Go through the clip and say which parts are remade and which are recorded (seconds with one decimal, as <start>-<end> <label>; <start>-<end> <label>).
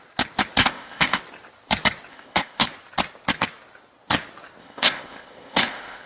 0.0-0.6 recorded; 0.6-1.2 remade; 1.2-2.1 recorded; 2.1-2.7 remade; 2.7-4.6 recorded; 4.6-6.1 remade